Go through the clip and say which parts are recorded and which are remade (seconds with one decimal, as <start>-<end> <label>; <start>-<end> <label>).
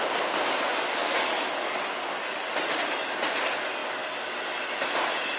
0.0-1.0 recorded; 1.0-2.5 remade; 2.5-5.4 recorded